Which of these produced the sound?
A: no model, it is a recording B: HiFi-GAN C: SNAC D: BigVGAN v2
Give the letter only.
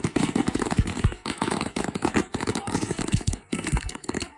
C